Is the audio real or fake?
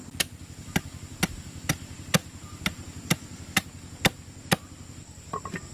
real